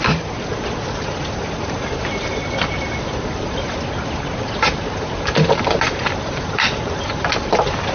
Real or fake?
real